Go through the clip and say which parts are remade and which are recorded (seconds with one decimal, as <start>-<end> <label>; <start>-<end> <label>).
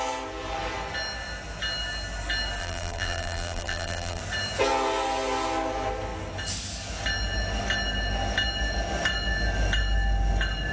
0.0-2.6 recorded; 2.6-4.2 remade; 4.2-10.7 recorded